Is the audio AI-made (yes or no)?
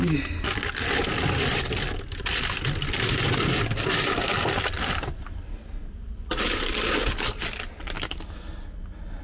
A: no